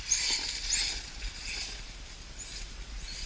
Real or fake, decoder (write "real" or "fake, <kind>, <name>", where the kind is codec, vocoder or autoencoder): real